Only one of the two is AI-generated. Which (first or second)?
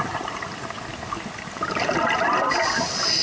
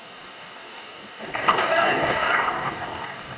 second